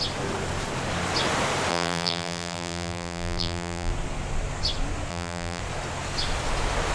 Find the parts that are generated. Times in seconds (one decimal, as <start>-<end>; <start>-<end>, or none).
1.7-3.9; 5.1-5.6